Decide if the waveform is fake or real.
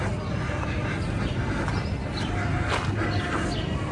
real